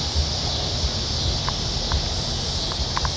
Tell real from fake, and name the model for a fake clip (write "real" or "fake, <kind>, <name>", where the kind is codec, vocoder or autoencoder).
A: real